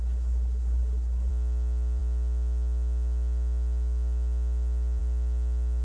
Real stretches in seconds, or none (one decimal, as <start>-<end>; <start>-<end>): 1.3-5.8